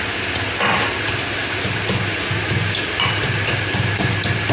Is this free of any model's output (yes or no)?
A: yes